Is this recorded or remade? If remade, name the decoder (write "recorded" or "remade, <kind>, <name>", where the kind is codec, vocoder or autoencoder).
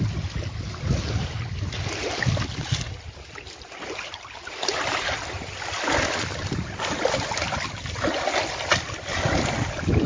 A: recorded